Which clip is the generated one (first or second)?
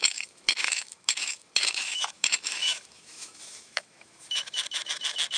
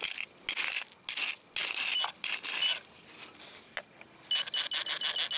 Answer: first